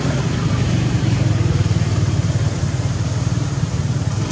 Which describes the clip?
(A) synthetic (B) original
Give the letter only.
A